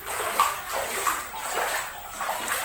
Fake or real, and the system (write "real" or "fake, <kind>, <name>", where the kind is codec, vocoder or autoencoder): fake, vocoder, BigVGAN v2